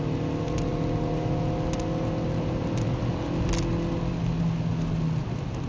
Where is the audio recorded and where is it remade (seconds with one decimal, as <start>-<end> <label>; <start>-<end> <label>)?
0.0-5.7 recorded